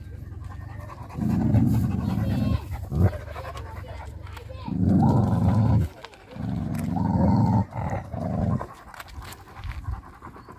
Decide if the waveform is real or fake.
real